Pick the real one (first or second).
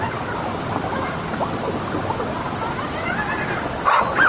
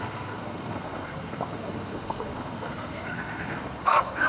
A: first